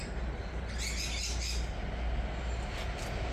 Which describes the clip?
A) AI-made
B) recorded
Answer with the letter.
B